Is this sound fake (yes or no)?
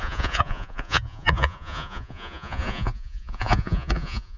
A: yes